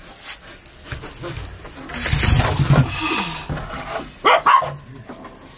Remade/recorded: recorded